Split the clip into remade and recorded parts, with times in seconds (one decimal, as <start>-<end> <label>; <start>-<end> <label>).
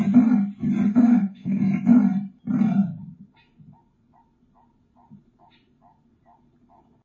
0.0-0.9 recorded; 0.9-1.6 remade; 1.6-7.0 recorded